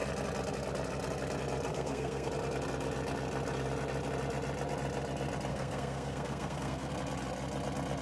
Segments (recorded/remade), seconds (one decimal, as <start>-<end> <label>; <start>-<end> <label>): 0.0-1.7 recorded; 1.7-2.3 remade; 2.3-5.5 recorded; 5.5-6.9 remade; 6.9-8.0 recorded